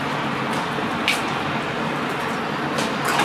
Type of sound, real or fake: real